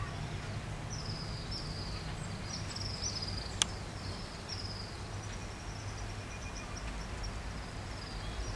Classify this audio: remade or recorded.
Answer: recorded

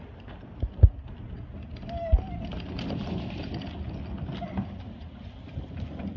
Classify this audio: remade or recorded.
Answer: recorded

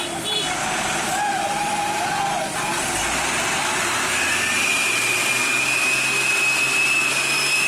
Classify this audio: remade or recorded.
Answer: recorded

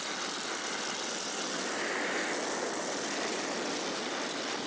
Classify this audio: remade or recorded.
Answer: recorded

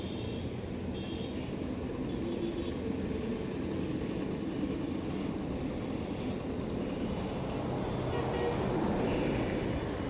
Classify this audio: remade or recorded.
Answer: recorded